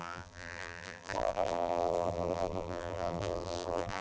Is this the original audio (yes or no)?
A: no